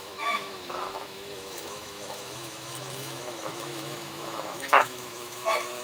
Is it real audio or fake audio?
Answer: fake